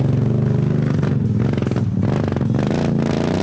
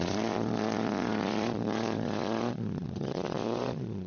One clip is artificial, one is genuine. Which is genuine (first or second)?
first